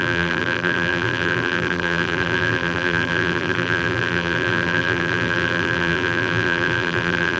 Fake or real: fake